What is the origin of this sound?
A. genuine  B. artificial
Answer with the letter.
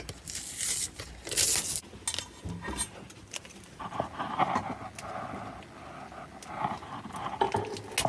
A